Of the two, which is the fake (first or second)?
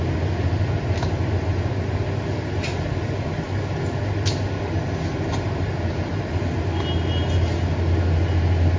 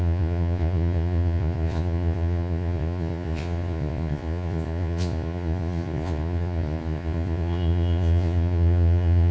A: second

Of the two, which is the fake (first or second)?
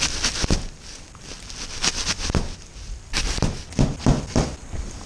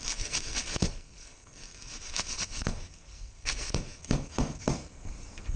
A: second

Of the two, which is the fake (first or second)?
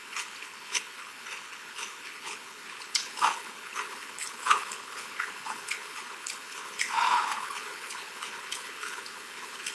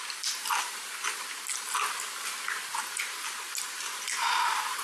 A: first